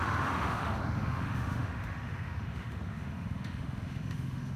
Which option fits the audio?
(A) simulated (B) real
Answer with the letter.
A